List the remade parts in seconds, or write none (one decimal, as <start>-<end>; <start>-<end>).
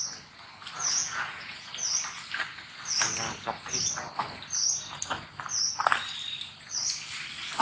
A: 1.0-1.7